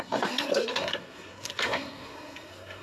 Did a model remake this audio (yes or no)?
yes